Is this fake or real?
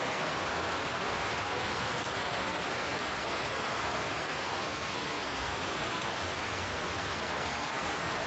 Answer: fake